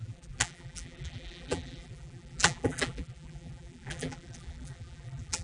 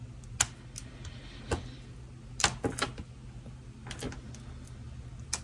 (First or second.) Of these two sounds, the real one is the second